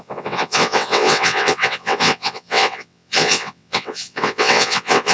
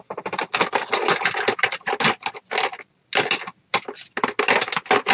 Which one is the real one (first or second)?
second